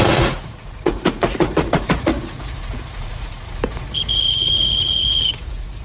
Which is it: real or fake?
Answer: fake